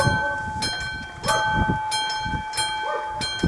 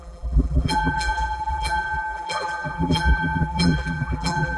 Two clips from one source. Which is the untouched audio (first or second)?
first